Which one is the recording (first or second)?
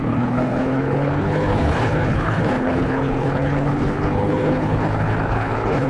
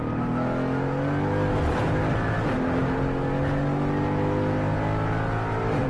second